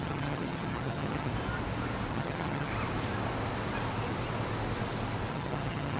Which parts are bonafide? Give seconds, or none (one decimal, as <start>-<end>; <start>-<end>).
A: 1.3-2.1; 2.7-5.3